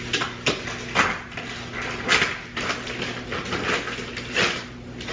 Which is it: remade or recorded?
recorded